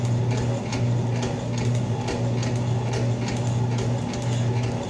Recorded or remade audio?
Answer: recorded